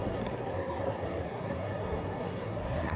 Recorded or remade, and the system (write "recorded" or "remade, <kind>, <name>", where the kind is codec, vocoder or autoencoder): remade, codec, SNAC